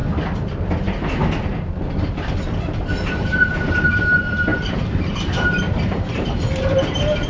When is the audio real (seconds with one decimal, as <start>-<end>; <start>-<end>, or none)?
0.0-4.5